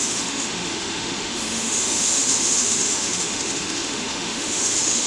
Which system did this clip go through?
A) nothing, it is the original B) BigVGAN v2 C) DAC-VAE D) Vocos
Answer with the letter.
C